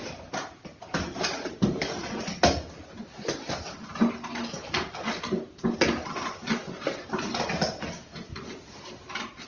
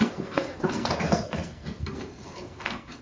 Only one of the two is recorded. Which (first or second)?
first